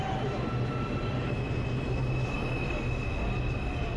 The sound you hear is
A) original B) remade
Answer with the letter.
A